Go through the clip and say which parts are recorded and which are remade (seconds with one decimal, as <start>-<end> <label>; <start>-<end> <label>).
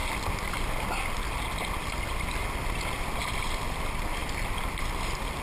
0.0-5.4 recorded